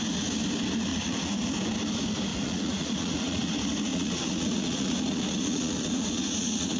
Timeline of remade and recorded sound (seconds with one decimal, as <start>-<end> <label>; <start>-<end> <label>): 0.0-0.9 recorded; 0.9-1.5 remade; 1.5-2.3 recorded; 2.3-3.5 remade; 3.5-3.9 recorded; 3.9-6.8 remade